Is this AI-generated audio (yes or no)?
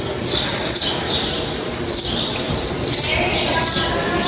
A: yes